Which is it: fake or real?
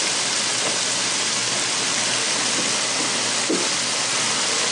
real